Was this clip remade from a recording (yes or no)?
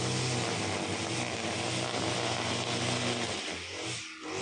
no